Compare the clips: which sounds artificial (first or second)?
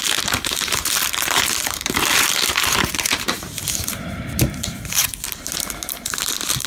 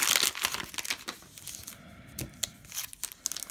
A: first